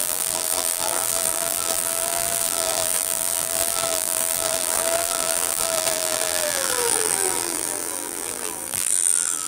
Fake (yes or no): yes